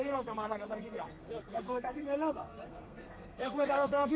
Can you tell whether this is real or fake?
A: fake